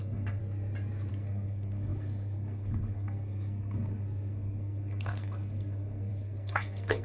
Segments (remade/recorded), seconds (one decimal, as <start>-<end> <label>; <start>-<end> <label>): 0.0-0.4 remade; 0.4-1.1 recorded; 1.1-7.0 remade

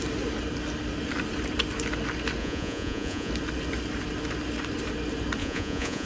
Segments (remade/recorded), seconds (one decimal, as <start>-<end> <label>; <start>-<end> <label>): 0.0-2.4 recorded; 2.4-3.3 remade; 3.3-5.4 recorded; 5.4-6.1 remade

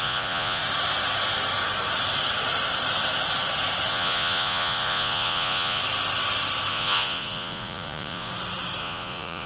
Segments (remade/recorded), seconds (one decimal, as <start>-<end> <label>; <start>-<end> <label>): 0.0-0.6 remade; 0.6-3.9 recorded; 3.9-5.8 remade; 5.8-6.7 recorded; 6.7-8.3 remade; 8.3-8.8 recorded; 8.8-9.5 remade

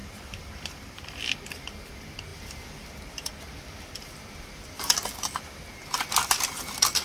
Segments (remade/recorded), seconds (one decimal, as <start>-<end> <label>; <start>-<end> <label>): 0.0-1.2 remade; 1.2-7.0 recorded

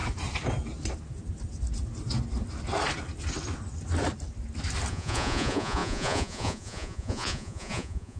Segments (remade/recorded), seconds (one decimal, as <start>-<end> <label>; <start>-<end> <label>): 0.0-4.9 recorded; 4.9-8.2 remade

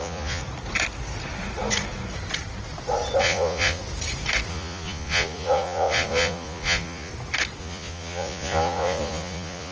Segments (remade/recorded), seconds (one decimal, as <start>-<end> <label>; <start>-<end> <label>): 0.0-0.4 remade; 0.4-3.2 recorded; 3.2-3.8 remade; 3.8-4.5 recorded; 4.5-7.1 remade; 7.1-7.6 recorded; 7.6-9.7 remade